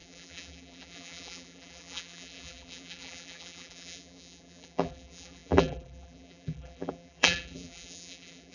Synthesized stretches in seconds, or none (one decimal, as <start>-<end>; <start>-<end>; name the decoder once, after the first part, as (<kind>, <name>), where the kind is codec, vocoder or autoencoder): 0.0-8.5 (vocoder, BigVGAN v2)